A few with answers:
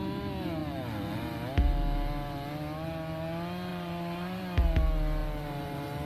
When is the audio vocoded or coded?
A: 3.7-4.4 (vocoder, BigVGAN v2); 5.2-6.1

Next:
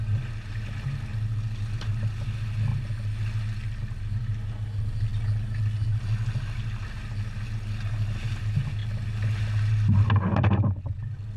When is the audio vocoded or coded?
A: none

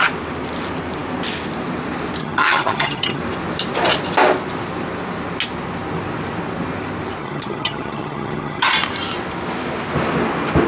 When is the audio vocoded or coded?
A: 2.2-3.2 (vocoder, HiFi-GAN); 7.2-8.7

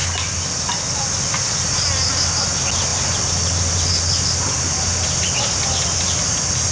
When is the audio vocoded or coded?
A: none